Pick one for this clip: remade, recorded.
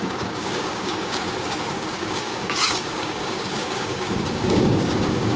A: remade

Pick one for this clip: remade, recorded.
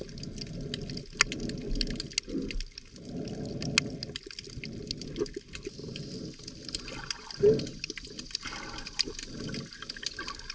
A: recorded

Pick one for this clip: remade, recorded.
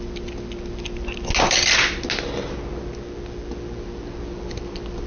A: recorded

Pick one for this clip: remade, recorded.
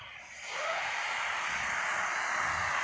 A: recorded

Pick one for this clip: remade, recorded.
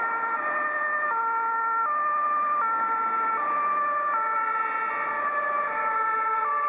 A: recorded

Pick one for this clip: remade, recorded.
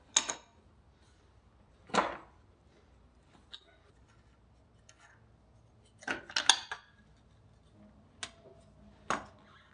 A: recorded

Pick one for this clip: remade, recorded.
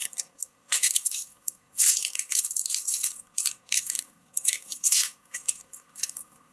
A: remade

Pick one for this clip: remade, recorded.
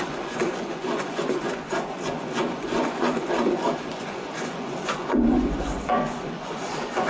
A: remade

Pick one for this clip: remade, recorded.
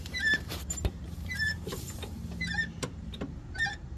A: remade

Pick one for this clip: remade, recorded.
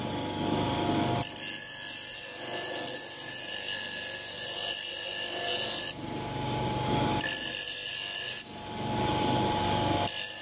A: recorded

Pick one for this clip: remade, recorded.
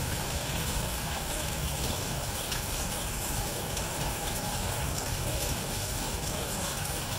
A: remade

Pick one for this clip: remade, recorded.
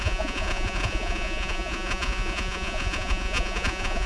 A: remade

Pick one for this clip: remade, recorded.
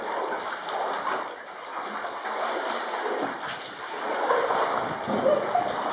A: recorded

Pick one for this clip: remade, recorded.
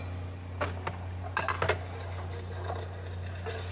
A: recorded